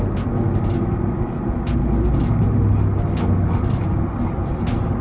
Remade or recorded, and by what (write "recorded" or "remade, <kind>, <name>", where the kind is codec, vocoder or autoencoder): recorded